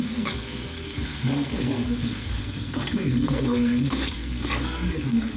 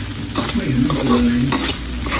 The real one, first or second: second